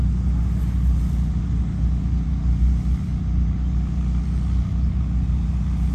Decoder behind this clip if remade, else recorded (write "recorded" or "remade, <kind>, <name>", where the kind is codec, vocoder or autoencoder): recorded